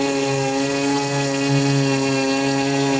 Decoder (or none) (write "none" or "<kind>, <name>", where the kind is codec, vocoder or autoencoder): none